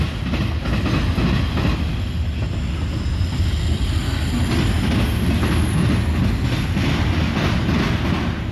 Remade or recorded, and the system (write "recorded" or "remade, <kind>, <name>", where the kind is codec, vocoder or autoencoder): recorded